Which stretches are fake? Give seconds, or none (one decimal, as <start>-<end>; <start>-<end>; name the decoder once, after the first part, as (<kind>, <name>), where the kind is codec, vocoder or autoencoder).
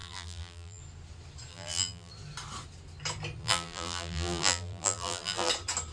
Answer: 0.0-0.8 (vocoder, BigVGAN v2); 1.5-2.1; 3.4-5.5